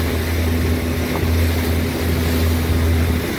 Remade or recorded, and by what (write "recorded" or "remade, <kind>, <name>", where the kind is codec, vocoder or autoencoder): recorded